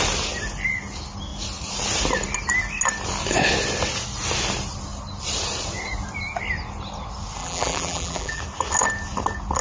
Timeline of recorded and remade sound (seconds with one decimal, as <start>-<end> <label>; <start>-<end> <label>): 0.0-7.4 recorded; 7.4-8.4 remade; 8.4-9.6 recorded